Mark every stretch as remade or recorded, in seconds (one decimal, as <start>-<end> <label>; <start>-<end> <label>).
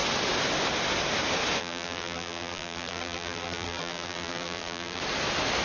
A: 0.0-1.6 recorded; 1.6-5.0 remade; 5.0-5.6 recorded